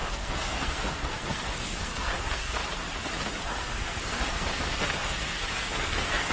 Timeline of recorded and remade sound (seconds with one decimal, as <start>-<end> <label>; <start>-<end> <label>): 0.0-2.6 remade; 2.6-3.4 recorded; 3.4-6.3 remade